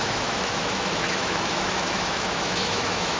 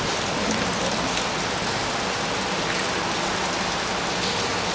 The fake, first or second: first